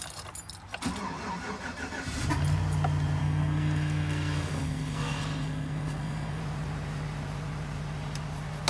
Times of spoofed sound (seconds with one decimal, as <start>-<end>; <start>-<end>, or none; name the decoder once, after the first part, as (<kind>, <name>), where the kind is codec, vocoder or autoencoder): 3.2-6.4 (codec, SNAC)